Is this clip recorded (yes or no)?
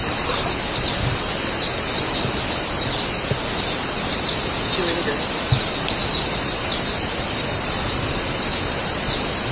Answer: yes